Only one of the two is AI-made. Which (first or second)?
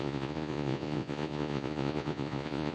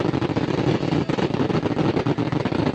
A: first